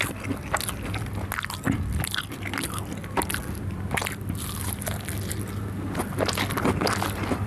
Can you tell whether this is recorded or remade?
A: recorded